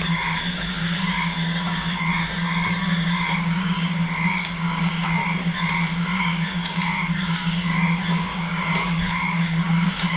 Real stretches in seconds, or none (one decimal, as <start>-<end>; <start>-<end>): 5.2-6.2